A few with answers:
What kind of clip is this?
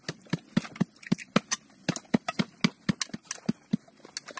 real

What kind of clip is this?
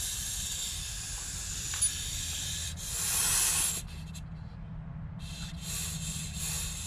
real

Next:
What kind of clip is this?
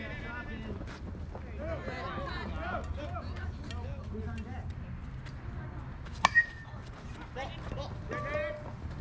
real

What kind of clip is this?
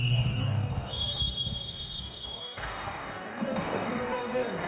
fake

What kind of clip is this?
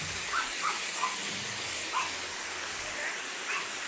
fake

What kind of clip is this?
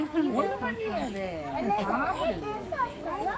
fake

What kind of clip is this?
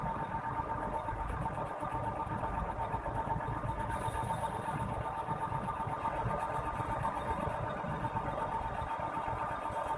real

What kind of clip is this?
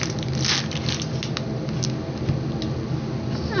real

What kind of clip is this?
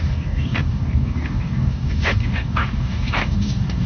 fake